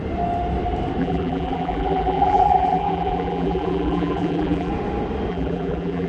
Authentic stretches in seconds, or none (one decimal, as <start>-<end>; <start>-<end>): 0.0-1.0; 4.7-5.3